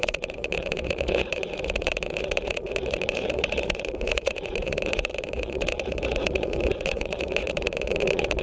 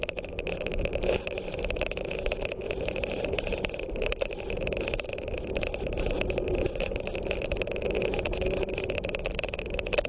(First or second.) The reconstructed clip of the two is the first